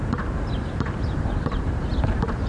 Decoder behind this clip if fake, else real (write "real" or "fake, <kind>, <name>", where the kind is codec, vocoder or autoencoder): fake, vocoder, BigVGAN v2